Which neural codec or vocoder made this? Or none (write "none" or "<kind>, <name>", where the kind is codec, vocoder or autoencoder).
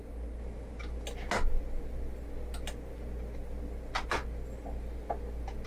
none